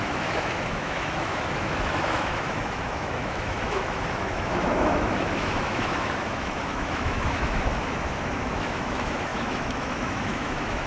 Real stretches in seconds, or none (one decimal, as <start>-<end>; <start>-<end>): none